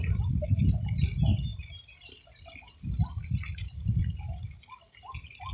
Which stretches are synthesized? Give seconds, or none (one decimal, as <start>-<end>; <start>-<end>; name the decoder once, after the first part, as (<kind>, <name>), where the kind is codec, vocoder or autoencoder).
none